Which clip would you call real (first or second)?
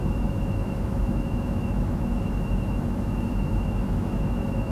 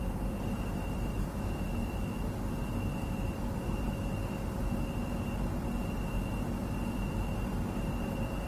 second